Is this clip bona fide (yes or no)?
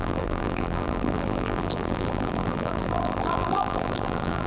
no